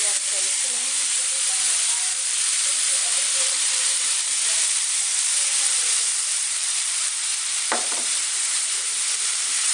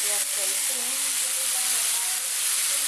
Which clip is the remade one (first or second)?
first